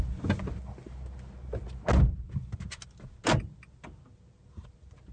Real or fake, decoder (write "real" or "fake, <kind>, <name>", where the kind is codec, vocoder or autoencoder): real